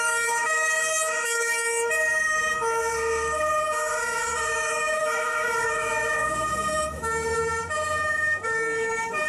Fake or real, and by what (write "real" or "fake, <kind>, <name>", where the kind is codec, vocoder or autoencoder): fake, autoencoder, DAC-VAE